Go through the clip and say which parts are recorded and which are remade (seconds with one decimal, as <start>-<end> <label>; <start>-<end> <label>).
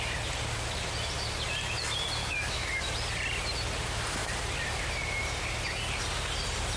0.0-2.2 recorded; 2.2-2.8 remade; 2.8-6.8 recorded